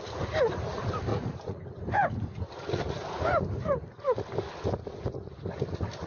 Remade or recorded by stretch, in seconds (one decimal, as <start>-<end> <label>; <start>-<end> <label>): 0.0-1.1 recorded; 1.1-1.6 remade; 1.6-6.1 recorded